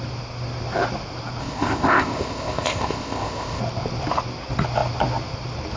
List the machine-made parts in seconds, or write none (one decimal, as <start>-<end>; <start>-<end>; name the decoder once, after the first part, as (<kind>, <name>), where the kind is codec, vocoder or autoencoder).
1.4-3.6 (codec, ZipCodec)